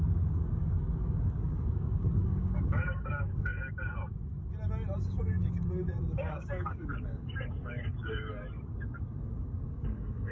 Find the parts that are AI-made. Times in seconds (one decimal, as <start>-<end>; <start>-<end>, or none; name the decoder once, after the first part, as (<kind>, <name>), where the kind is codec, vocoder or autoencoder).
0.0-3.5 (codec, DAC); 5.2-10.3